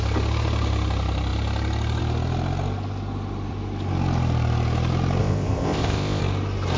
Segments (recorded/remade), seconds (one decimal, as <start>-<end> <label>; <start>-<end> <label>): 0.0-5.2 recorded; 5.2-6.2 remade; 6.2-6.8 recorded